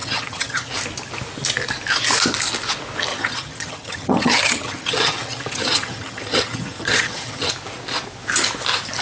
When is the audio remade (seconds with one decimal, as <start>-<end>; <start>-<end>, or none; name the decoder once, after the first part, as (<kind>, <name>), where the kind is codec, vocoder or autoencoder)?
0.0-0.7 (vocoder, HiFi-GAN); 3.1-7.5